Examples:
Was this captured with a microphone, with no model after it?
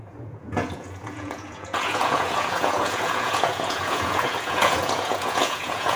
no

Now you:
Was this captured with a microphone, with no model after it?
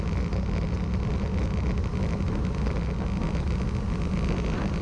yes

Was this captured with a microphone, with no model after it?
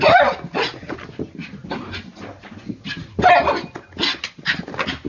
yes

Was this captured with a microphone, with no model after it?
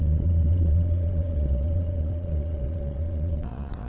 no